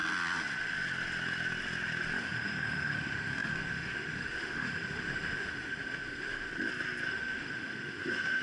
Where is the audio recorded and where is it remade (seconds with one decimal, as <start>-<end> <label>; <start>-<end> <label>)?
0.0-2.2 recorded; 2.2-6.5 remade; 6.5-7.1 recorded; 7.1-8.4 remade